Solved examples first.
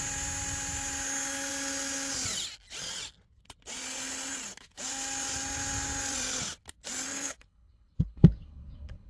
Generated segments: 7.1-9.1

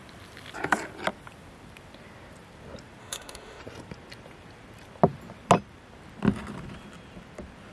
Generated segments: 3.0-3.6